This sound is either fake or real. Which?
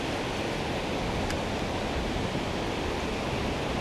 real